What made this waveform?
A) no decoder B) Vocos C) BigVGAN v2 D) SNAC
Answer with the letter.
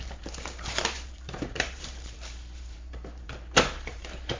C